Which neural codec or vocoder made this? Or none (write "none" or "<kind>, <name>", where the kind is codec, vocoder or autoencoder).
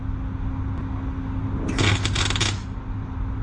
none